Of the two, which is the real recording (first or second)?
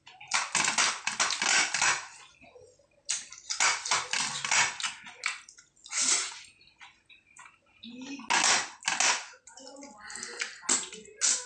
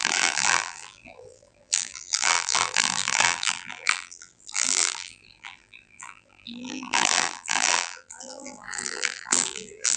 first